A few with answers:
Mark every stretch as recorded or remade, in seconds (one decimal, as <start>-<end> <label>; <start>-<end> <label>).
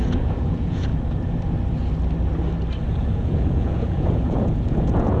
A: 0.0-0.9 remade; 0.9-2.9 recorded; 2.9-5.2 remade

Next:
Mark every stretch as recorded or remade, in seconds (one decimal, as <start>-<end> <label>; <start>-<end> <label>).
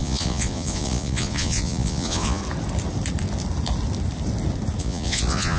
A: 0.0-2.4 remade; 2.4-4.8 recorded; 4.8-5.6 remade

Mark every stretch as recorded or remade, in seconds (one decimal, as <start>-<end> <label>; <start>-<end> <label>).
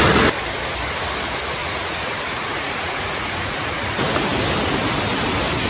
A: 0.0-1.6 recorded; 1.6-3.9 remade; 3.9-5.7 recorded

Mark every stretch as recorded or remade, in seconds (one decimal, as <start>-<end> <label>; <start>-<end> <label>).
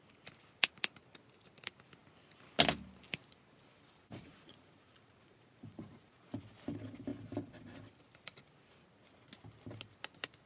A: 0.0-4.0 recorded; 4.0-6.4 remade; 6.4-10.5 recorded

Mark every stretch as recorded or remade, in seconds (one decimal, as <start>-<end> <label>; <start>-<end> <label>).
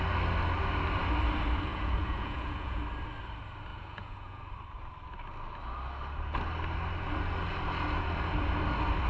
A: 0.0-1.7 recorded; 1.7-2.8 remade; 2.8-3.7 recorded; 3.7-4.4 remade; 4.4-9.1 recorded